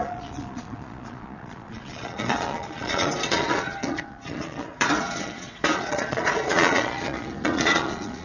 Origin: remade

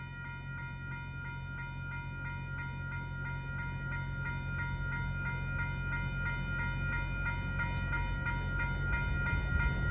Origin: recorded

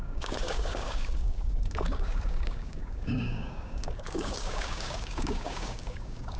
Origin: remade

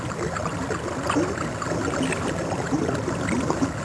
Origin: recorded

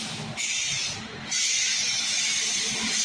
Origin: recorded